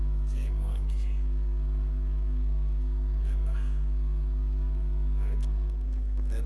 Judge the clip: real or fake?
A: fake